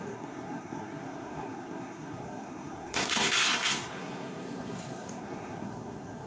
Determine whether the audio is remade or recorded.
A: remade